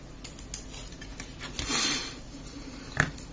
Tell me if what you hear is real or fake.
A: real